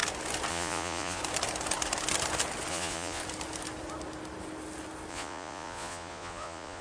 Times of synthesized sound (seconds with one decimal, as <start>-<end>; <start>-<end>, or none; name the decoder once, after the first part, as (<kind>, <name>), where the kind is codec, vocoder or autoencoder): 0.5-1.2 (vocoder, Vocos); 2.7-3.2; 5.1-6.8